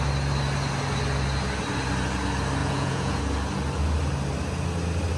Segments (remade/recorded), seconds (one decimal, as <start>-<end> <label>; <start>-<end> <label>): 0.0-2.6 recorded; 2.6-3.2 remade; 3.2-5.2 recorded